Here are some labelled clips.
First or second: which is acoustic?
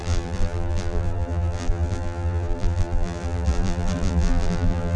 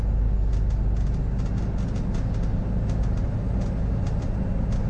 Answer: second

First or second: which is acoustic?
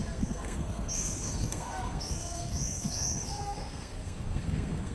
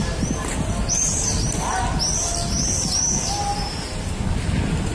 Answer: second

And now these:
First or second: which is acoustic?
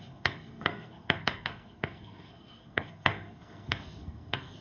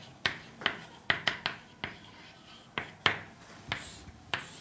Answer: second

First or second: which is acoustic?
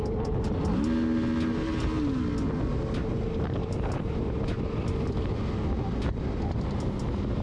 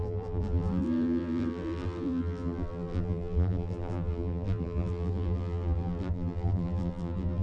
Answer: first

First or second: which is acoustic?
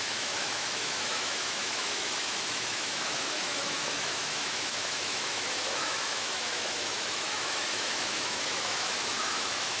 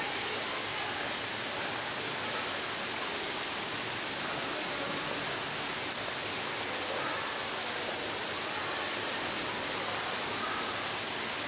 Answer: second